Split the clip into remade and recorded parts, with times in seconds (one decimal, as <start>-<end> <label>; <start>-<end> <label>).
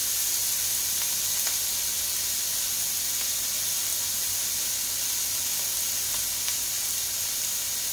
0.0-7.9 recorded